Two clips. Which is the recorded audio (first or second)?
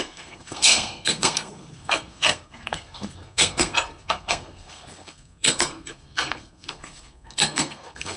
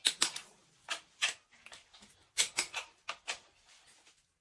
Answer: second